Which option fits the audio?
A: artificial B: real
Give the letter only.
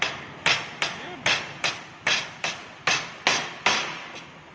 B